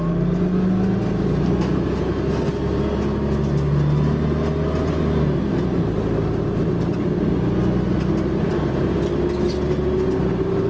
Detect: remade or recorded recorded